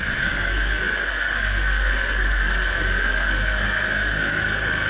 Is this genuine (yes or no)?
no